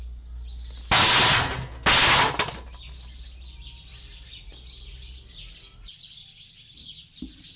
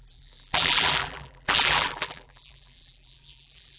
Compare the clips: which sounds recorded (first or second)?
first